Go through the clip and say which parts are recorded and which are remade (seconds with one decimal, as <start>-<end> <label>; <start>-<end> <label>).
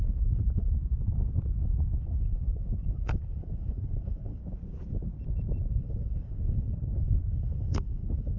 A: 0.0-0.7 remade; 0.7-2.0 recorded; 2.0-4.4 remade; 4.4-5.7 recorded; 5.7-8.4 remade